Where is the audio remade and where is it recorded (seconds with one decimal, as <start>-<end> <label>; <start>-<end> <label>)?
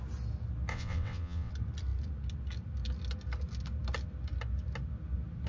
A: 0.0-0.7 recorded; 0.7-1.5 remade; 1.5-5.5 recorded